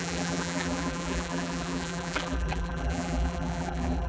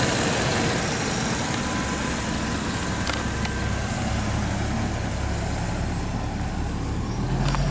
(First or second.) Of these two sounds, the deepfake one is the first